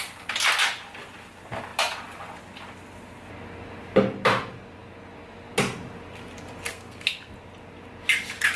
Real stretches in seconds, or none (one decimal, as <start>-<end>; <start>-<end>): 0.0-6.7; 7.3-8.6